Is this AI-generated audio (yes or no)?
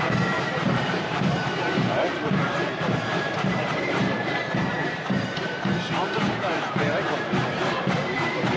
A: yes